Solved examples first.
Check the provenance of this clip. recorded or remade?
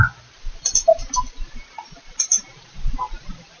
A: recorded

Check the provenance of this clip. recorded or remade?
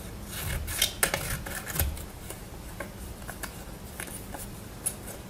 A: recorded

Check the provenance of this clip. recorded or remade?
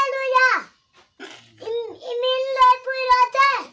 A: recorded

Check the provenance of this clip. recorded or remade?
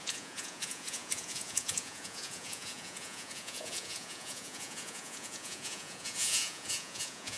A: remade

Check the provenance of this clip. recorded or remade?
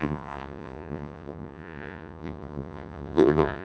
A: remade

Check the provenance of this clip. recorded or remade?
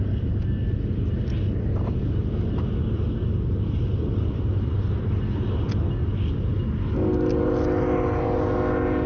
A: recorded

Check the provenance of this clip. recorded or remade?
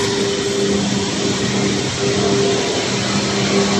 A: recorded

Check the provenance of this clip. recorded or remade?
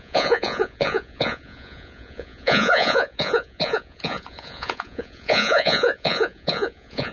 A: remade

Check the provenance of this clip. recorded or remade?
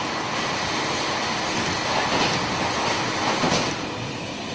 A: recorded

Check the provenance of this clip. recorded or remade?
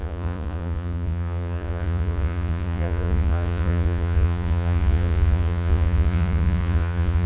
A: remade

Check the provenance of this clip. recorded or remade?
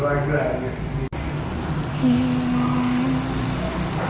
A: recorded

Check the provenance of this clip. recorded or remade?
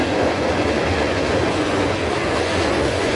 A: remade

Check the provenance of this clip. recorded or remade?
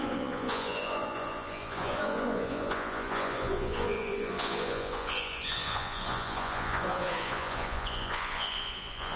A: remade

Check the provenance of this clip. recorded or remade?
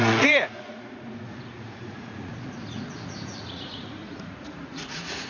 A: remade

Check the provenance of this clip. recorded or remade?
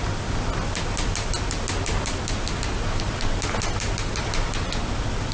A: recorded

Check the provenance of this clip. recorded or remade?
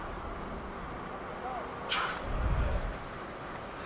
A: recorded